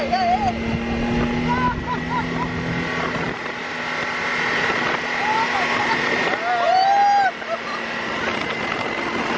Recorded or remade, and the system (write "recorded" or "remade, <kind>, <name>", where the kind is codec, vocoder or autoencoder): recorded